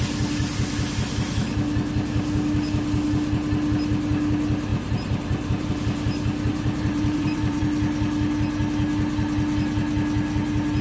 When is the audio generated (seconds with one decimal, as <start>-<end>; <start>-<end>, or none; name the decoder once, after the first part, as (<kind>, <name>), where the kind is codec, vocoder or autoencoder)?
4.7-5.7 (vocoder, BigVGAN v2); 6.5-7.6